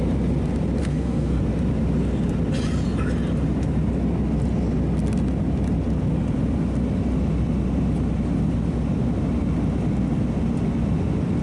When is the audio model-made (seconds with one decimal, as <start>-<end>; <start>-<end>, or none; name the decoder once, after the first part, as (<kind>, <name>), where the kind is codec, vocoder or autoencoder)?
0.8-1.4 (codec, SNAC)